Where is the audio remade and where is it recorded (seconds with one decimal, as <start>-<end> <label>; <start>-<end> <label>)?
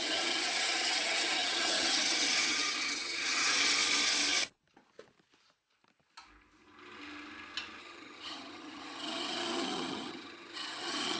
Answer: 0.0-3.5 remade; 3.5-7.8 recorded; 7.8-11.2 remade